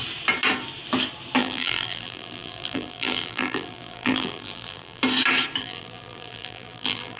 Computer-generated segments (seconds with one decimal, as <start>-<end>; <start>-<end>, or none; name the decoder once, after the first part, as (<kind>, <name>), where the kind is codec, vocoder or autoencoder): 1.4-5.0 (vocoder, BigVGAN v2); 5.6-7.2